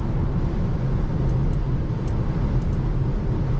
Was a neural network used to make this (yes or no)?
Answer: no